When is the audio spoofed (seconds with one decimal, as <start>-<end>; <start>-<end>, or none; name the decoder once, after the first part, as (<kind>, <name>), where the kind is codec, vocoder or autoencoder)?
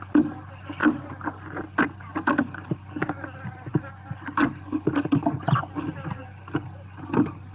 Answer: none